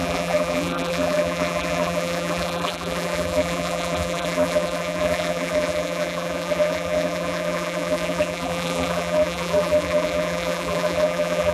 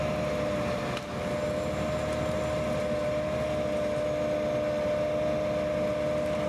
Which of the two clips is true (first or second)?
second